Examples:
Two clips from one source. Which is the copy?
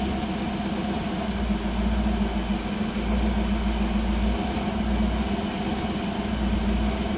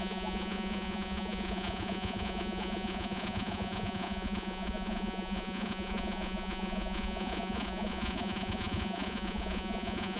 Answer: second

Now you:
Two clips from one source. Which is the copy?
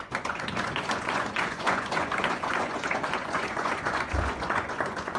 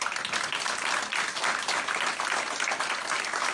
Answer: first